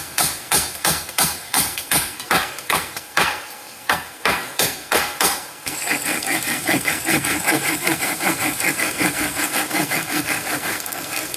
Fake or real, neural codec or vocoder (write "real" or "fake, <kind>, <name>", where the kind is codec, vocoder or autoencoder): fake, codec, SNAC